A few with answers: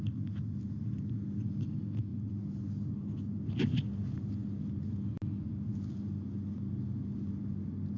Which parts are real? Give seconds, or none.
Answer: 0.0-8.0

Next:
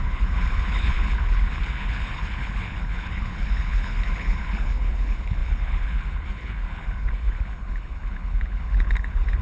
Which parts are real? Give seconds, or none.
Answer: none

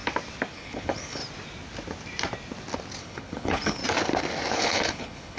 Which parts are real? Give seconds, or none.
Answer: 0.0-0.5; 1.2-3.0; 3.8-4.5

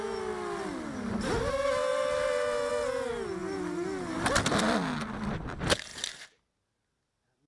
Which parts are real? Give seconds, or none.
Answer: 0.0-7.5

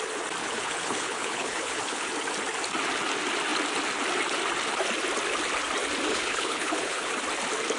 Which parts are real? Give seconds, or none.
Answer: 0.0-0.4; 2.1-6.1; 7.1-7.8

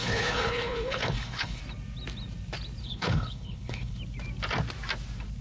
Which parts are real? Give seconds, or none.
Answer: 1.6-2.8; 4.0-5.4